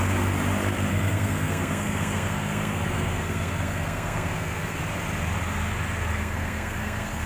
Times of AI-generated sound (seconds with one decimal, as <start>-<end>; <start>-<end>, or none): 0.9-4.8; 6.1-7.3